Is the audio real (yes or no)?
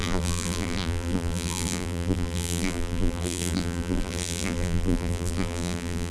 no